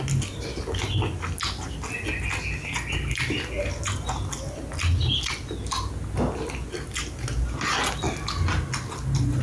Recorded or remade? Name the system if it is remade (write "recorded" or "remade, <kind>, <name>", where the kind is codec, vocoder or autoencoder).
recorded